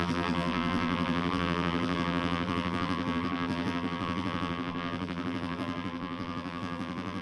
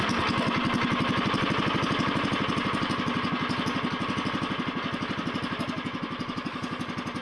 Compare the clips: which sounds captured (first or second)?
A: second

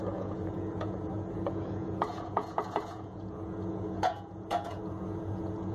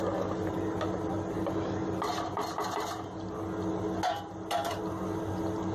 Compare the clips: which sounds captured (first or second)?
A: second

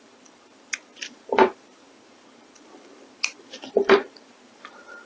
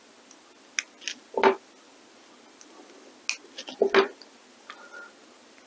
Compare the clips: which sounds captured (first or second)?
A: second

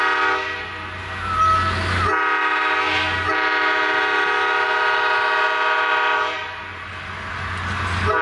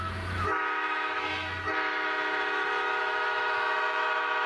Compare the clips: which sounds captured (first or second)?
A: first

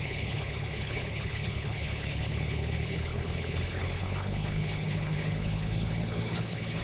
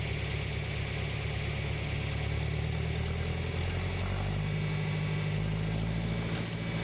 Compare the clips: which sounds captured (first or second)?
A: second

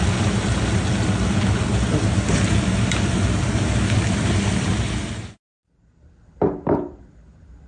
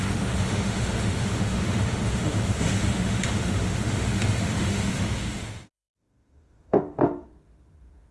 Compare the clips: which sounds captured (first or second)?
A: first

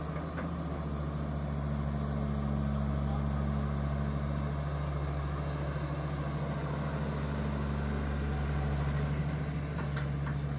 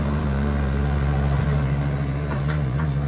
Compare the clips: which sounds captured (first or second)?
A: first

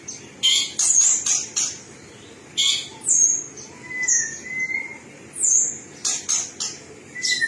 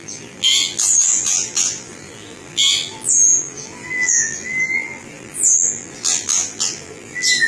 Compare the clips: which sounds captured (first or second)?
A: first